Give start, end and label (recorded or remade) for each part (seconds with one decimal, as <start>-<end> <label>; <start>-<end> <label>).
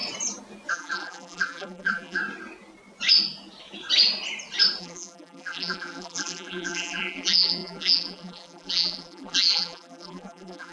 0.0-0.7 recorded; 0.7-2.2 remade; 2.2-4.8 recorded; 4.8-10.7 remade